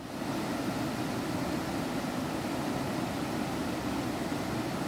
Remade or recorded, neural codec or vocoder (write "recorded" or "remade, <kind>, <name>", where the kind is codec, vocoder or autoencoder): recorded